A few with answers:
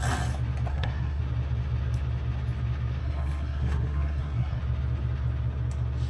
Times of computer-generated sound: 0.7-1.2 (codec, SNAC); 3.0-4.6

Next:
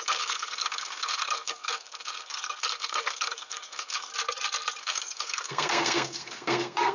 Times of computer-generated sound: 0.0-4.1 (codec, SNAC); 4.8-6.9

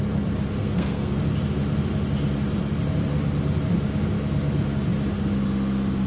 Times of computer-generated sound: 0.6-1.2 (codec, SNAC)

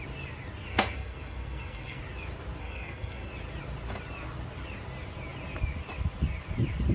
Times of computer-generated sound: 0.7-2.0 (codec, SNAC); 2.6-3.3

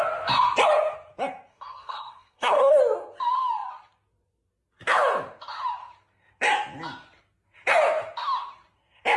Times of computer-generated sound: 1.5-2.8 (codec, SNAC)

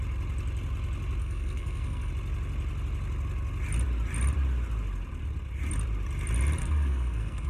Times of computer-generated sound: 1.2-2.1 (codec, SNAC); 6.6-7.5

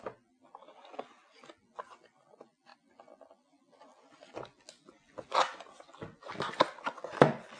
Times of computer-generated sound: none

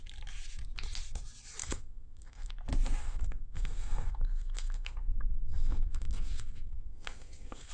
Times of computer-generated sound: 1.6-2.5 (codec, SNAC); 3.0-7.7